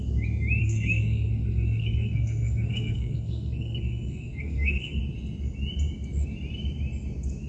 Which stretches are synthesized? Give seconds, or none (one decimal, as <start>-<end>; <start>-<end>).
0.6-5.0